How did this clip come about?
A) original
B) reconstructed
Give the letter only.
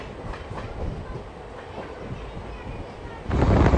A